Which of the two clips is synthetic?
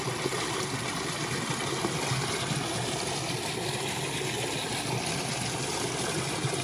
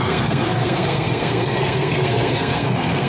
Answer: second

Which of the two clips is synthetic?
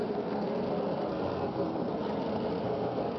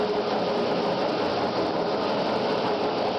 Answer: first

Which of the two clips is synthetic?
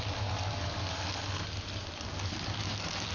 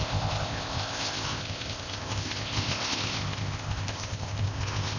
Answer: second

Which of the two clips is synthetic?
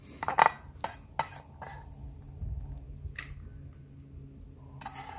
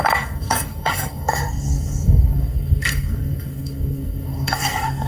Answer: second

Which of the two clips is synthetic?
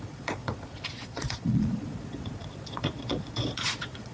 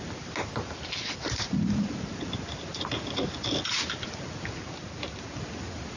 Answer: first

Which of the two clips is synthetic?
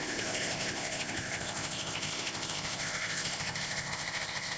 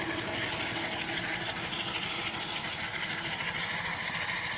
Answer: first